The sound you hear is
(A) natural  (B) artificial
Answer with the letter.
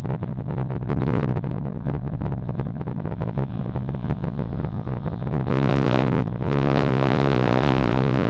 B